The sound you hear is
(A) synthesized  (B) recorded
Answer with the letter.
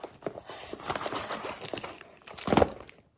B